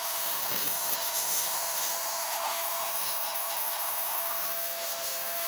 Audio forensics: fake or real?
fake